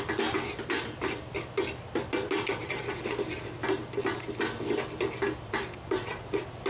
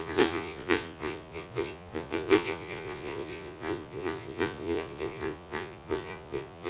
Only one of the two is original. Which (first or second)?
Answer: first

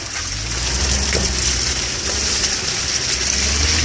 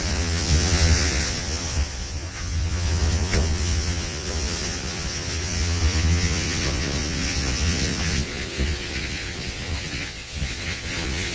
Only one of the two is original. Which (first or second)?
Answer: first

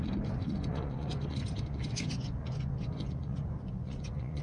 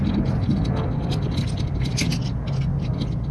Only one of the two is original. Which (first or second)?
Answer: second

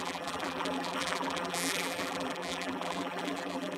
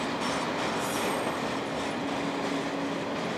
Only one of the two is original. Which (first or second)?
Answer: second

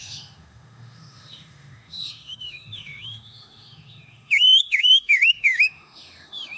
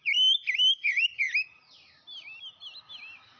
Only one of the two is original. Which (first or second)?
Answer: second